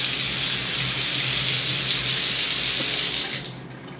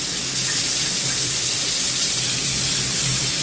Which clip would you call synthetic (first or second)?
second